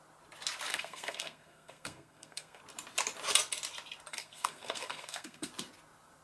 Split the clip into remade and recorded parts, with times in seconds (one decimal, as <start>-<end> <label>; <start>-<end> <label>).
0.0-0.7 recorded; 0.7-2.6 remade; 2.6-4.1 recorded; 4.1-5.5 remade; 5.5-6.2 recorded